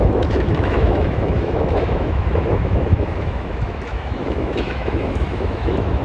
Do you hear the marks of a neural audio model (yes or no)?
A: yes